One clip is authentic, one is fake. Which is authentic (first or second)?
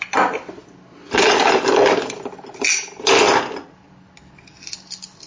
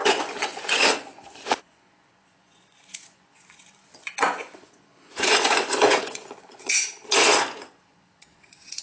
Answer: first